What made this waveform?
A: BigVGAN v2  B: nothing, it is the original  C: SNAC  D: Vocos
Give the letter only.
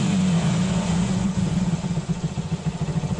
D